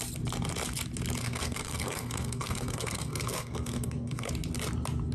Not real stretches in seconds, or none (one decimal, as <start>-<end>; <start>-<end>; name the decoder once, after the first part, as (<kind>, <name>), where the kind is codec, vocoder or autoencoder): 1.2-4.3 (codec, SNAC)